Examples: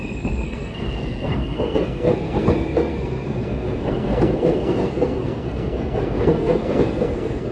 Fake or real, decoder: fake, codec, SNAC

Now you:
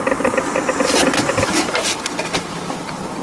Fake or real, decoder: real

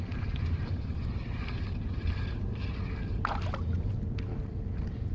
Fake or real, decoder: real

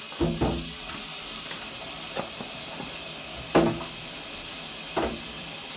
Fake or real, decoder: real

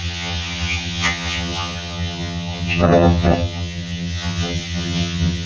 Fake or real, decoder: fake, vocoder, HiFi-GAN